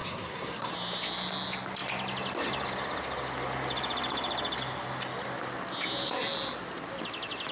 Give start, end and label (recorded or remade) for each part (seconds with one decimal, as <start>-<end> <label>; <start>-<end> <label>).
0.0-0.7 remade; 0.7-7.5 recorded

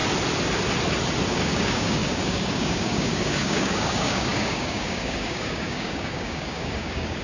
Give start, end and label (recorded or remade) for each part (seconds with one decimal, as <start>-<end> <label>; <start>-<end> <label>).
0.0-1.3 recorded; 1.3-7.2 remade

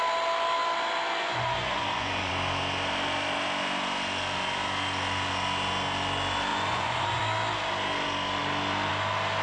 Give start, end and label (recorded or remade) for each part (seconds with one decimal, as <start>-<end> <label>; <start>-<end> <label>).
0.0-1.2 recorded; 1.2-2.3 remade; 2.3-6.5 recorded; 6.5-7.2 remade; 7.2-9.4 recorded